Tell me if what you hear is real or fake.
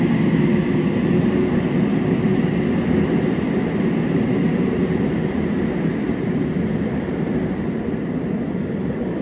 real